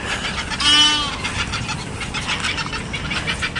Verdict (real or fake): real